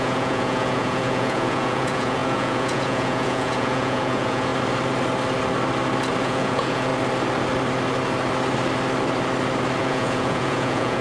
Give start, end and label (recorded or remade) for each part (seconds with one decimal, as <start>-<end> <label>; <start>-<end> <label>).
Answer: 0.0-4.5 remade; 4.5-6.2 recorded; 6.2-6.9 remade; 6.9-9.8 recorded; 9.8-11.0 remade